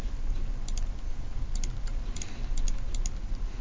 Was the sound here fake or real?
real